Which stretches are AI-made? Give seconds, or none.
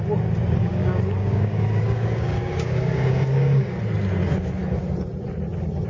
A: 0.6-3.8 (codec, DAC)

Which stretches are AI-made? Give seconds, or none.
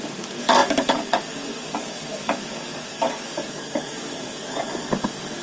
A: 0.0-5.4 (codec, DAC)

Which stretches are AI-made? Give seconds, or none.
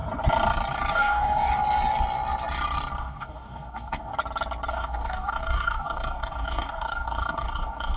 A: 0.9-1.5 (codec, DAC); 3.0-4.1; 4.7-8.0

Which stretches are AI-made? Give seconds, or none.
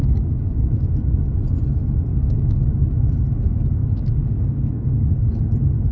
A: 0.0-0.7 (codec, DAC); 2.1-2.7; 3.8-5.3